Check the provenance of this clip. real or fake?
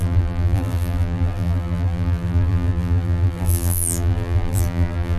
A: fake